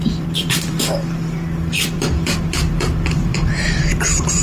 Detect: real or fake fake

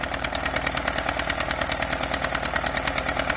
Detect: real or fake fake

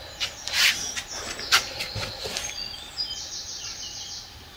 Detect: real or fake real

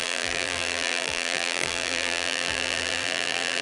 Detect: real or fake fake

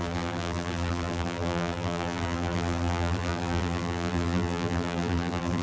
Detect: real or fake fake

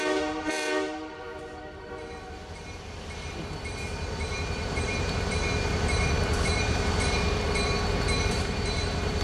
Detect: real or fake fake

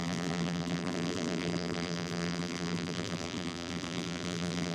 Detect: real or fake fake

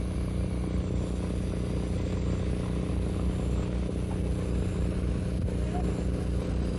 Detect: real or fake real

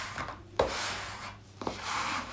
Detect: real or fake fake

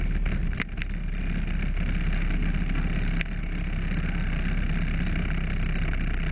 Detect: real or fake real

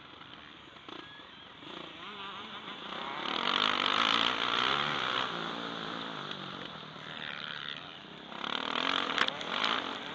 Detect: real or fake fake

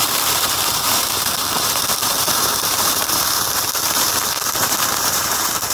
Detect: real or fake fake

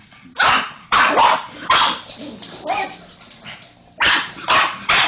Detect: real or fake fake